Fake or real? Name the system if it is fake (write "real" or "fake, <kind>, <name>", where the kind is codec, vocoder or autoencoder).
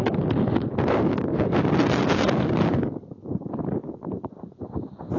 real